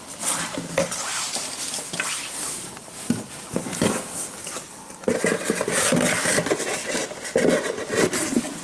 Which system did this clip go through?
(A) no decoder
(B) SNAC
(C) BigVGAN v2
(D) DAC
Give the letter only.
A